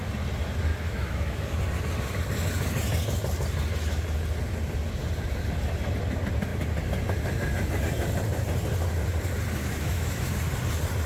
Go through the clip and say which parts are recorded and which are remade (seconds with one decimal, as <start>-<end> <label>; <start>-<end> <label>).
0.0-0.7 recorded; 0.7-1.6 remade; 1.6-9.6 recorded; 9.6-10.3 remade; 10.3-11.1 recorded